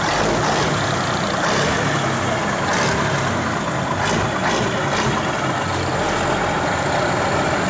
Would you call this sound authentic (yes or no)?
yes